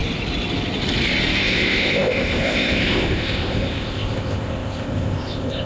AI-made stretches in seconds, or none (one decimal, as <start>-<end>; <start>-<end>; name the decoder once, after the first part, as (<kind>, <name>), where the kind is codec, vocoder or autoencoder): 1.4-5.7 (codec, ZipCodec)